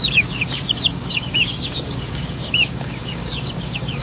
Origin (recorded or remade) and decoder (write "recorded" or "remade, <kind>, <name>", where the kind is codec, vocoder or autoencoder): remade, codec, DAC